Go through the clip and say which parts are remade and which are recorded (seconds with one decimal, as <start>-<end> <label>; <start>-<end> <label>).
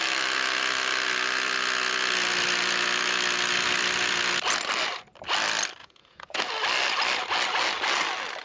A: 0.0-5.8 recorded; 5.8-6.4 remade; 6.4-8.4 recorded